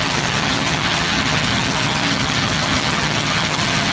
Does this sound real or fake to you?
fake